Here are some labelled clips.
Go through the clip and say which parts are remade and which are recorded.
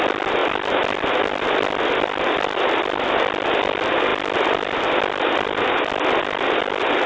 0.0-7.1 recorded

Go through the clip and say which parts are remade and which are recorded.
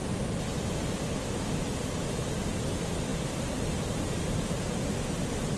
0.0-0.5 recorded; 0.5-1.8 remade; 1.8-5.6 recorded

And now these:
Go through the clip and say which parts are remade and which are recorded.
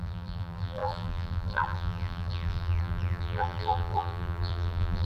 0.0-5.0 remade